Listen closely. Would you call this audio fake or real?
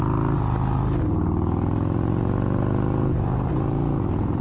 real